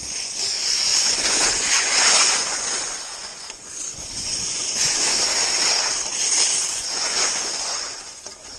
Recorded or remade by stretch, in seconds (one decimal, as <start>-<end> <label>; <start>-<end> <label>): 0.0-5.3 remade; 5.3-6.7 recorded; 6.7-8.6 remade